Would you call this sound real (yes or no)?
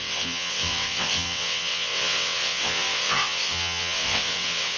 no